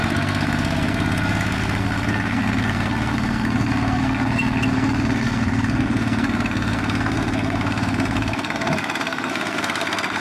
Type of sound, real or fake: fake